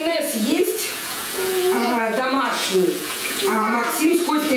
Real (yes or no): no